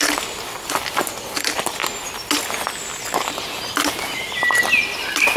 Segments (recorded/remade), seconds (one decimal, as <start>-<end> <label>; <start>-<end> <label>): 0.0-1.8 remade; 1.8-5.0 recorded; 5.0-5.4 remade

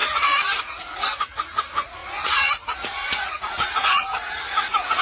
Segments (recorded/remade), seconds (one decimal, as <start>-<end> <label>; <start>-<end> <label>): 0.0-5.0 remade

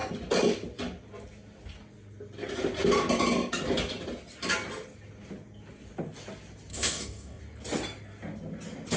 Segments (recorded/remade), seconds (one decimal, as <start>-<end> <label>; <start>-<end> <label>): 0.0-6.7 recorded; 6.7-7.4 remade; 7.4-9.0 recorded